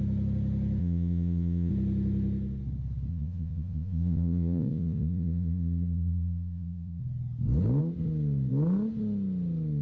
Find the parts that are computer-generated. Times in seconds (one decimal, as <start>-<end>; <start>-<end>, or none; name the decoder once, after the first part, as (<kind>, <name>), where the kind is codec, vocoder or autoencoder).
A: 0.8-1.7 (vocoder, Vocos); 3.1-7.0